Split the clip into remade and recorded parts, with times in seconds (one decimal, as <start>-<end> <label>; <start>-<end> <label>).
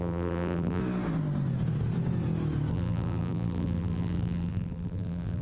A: 0.0-0.8 remade; 0.8-2.7 recorded; 2.7-5.4 remade